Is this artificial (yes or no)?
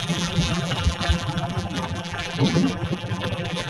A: yes